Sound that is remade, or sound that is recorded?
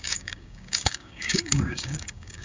remade